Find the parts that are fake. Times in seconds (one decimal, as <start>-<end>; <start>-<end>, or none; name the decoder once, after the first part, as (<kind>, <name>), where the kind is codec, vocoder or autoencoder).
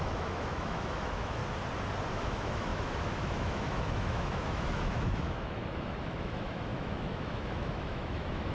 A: 0.0-1.4 (autoencoder, DAC-VAE); 2.1-8.5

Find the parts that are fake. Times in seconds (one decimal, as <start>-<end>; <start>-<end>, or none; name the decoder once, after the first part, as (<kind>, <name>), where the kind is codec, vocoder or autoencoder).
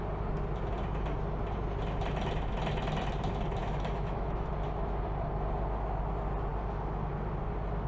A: 3.6-4.5 (autoencoder, DAC-VAE)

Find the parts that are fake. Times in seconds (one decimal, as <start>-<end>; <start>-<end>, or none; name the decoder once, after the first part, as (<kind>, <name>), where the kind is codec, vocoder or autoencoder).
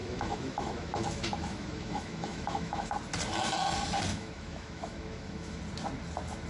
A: 0.0-2.9 (autoencoder, DAC-VAE); 4.1-5.6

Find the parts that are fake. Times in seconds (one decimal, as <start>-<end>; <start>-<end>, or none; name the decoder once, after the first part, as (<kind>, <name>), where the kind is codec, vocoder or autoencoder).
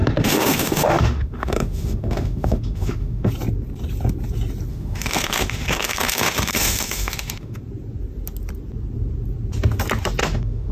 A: 0.0-3.3 (autoencoder, DAC-VAE); 4.7-7.6; 10.2-10.7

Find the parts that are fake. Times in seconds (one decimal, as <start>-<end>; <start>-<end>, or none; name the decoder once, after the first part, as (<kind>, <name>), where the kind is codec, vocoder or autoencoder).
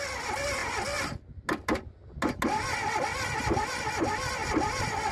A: none